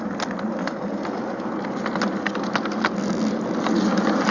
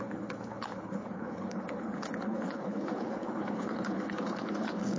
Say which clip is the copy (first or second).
second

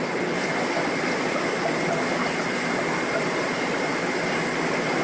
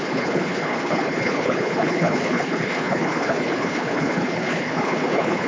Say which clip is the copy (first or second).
second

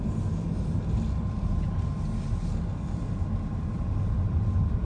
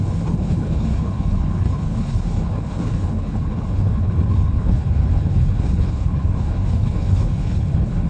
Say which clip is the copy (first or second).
second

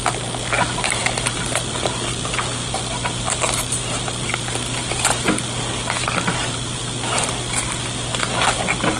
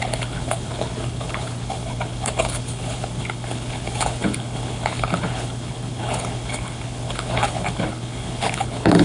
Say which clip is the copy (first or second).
second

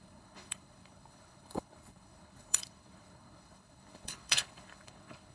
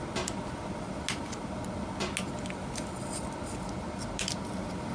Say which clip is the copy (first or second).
first